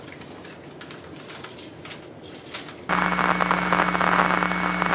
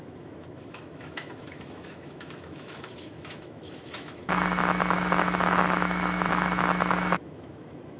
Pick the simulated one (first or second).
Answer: second